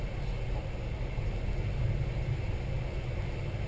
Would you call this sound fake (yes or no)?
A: no